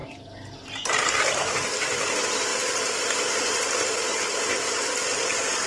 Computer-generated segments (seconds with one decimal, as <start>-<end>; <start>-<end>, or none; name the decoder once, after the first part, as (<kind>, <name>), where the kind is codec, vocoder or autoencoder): none